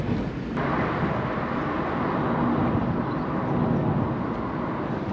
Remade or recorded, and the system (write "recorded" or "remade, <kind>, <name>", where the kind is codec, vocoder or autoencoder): recorded